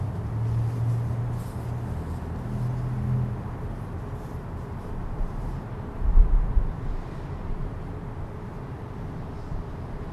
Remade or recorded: recorded